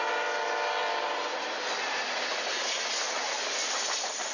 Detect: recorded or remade recorded